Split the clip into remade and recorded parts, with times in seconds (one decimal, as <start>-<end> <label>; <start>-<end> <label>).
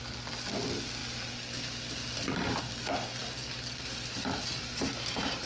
0.0-5.5 recorded